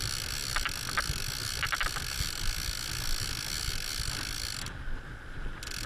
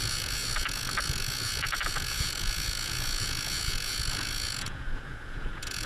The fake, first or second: second